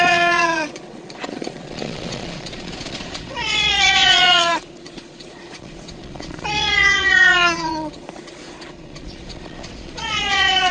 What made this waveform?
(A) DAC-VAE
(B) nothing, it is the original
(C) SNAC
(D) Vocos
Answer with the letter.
D